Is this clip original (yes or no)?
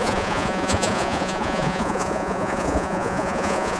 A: no